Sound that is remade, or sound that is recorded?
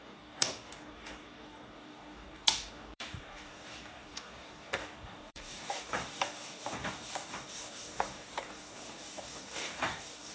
remade